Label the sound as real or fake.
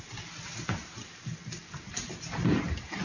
real